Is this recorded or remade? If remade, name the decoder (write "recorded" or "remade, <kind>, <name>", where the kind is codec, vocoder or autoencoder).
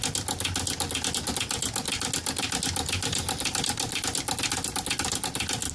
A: recorded